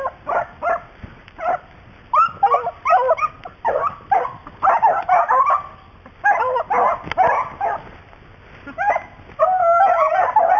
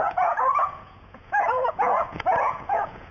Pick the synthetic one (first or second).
second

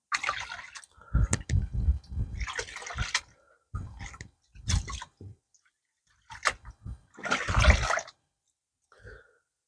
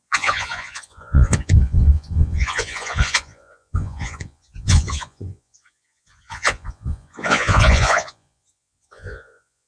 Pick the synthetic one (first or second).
second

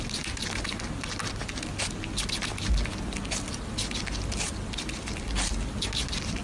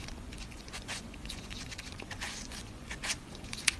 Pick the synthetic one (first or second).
second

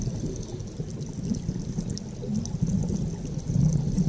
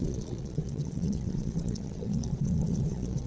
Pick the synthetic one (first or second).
second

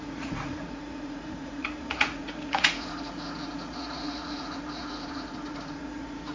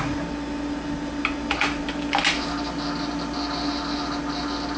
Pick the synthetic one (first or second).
first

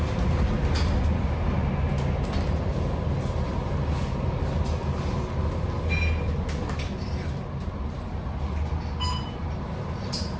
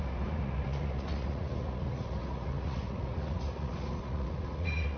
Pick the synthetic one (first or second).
second